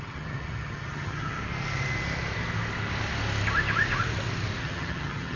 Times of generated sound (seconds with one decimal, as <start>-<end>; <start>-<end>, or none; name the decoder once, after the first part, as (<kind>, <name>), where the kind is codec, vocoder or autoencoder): 0.0-1.4 (vocoder, HiFi-GAN); 4.6-5.4